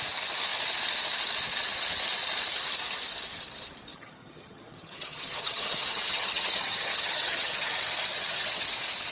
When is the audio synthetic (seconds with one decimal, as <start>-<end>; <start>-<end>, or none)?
3.9-7.7; 8.1-8.6